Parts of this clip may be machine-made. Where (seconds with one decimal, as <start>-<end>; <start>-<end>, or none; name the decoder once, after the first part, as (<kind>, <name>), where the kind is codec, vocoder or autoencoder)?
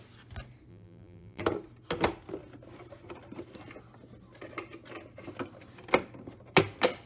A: 0.7-1.4 (vocoder, BigVGAN v2)